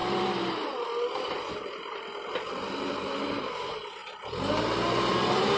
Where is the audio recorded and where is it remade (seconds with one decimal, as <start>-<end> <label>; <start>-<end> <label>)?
0.0-5.6 recorded

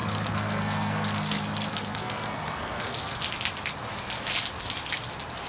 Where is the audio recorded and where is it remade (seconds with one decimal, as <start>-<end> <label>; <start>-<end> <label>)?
0.0-3.2 remade; 3.2-5.5 recorded